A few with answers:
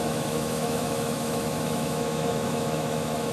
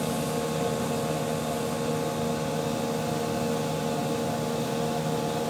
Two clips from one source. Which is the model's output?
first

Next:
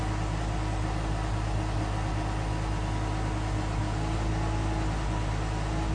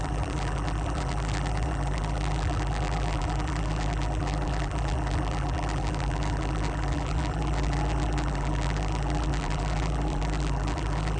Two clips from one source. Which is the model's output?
second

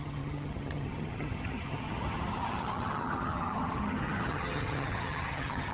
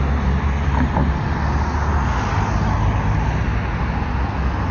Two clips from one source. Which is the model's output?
first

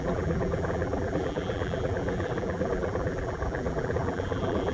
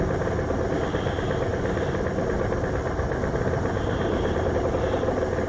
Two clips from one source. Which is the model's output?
first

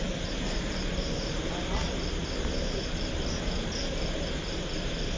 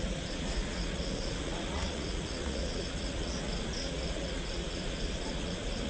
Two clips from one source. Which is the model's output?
second